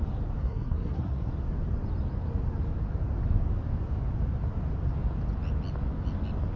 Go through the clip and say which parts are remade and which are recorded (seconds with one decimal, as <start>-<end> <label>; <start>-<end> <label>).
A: 0.0-0.4 recorded; 0.4-1.3 remade; 1.3-6.6 recorded